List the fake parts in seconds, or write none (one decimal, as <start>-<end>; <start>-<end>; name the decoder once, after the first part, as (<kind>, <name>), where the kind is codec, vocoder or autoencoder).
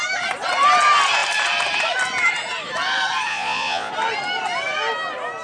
3.3-3.9 (vocoder, Vocos)